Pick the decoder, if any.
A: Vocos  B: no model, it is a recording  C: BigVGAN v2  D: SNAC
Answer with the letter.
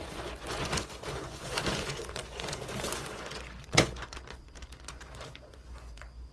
A